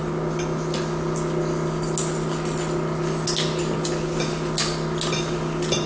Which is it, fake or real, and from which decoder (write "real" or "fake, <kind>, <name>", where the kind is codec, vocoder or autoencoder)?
real